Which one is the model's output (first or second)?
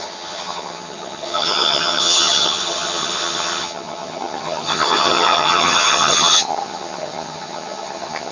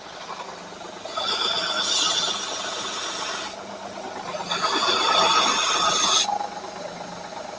first